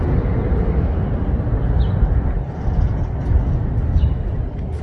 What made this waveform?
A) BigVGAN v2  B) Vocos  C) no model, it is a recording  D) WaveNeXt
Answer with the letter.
C